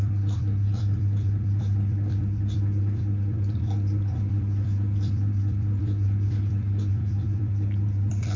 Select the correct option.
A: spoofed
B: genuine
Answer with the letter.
A